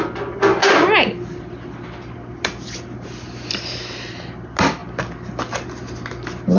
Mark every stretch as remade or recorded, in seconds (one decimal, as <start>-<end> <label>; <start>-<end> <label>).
0.0-6.6 recorded

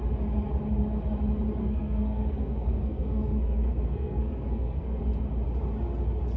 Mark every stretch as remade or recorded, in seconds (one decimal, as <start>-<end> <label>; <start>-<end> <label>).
0.0-1.6 recorded; 1.6-5.0 remade; 5.0-6.4 recorded

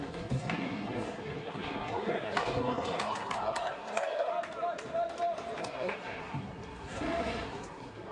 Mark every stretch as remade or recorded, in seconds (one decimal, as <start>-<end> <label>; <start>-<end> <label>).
0.0-4.3 remade; 4.3-5.6 recorded; 5.6-8.1 remade

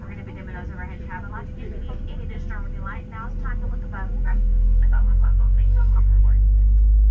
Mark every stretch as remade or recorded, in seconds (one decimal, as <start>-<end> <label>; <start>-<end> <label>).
0.0-4.2 recorded; 4.2-6.2 remade; 6.2-7.1 recorded

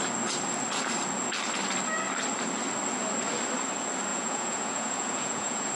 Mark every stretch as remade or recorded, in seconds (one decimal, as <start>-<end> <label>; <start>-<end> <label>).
0.0-4.1 recorded; 4.1-5.7 remade

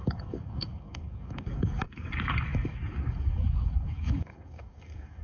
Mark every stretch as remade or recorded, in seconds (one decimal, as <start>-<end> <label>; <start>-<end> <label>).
0.0-5.2 remade